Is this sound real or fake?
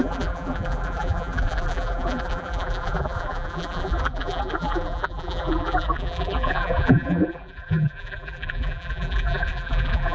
fake